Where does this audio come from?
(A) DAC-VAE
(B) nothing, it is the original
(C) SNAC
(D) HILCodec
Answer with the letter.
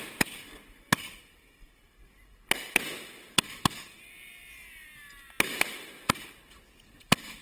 B